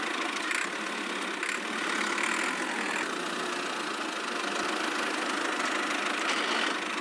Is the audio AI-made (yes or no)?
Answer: no